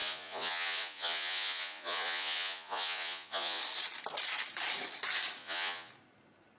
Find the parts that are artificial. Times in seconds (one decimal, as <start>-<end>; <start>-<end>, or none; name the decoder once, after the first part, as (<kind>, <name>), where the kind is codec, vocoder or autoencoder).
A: 0.0-3.6 (vocoder, Vocos); 5.4-5.9